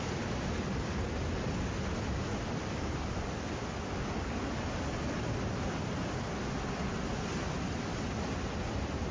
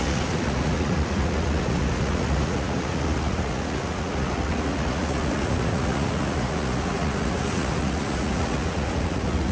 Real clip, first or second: first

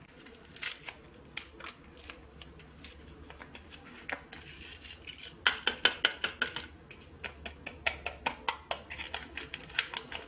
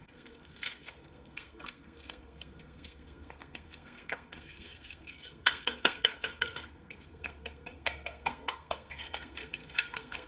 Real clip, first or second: first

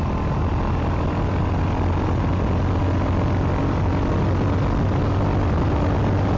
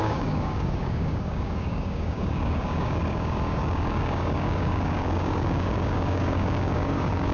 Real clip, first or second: first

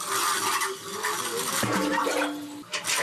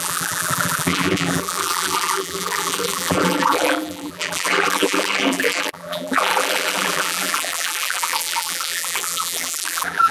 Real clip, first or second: first